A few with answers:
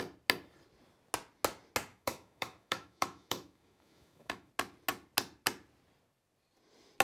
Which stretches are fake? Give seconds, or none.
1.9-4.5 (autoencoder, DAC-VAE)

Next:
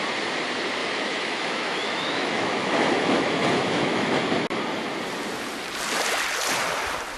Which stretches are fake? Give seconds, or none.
0.8-4.2 (autoencoder, DAC-VAE)

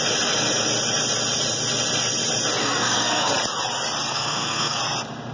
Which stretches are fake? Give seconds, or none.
2.6-3.3 (codec, SNAC); 4.1-4.8

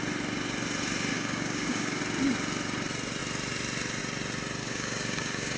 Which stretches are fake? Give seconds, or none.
1.1-2.0 (codec, DAC); 4.6-5.6

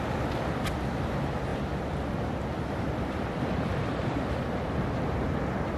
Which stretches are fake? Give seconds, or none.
none

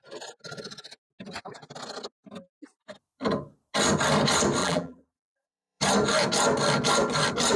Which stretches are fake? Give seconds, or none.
4.6-5.8 (vocoder, BigVGAN v2)